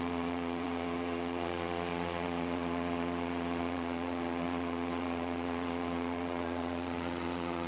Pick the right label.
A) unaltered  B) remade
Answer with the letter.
B